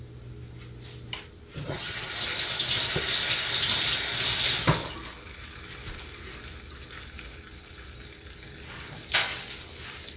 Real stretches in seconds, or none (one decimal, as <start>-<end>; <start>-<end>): 0.0-1.6; 2.1-10.2